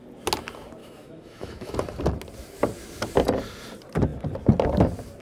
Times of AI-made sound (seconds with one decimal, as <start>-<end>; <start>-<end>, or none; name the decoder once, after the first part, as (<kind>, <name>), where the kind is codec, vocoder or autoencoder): 0.8-1.7 (autoencoder, DAC-VAE)